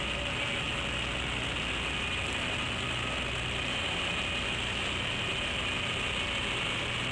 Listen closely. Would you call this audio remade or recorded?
recorded